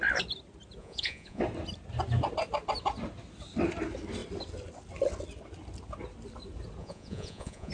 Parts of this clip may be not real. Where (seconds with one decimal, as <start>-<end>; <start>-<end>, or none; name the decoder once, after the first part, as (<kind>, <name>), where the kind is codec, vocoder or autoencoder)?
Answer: 0.8-1.4 (vocoder, Vocos); 6.8-7.7